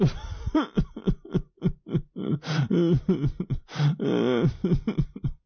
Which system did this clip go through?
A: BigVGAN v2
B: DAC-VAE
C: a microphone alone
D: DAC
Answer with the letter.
C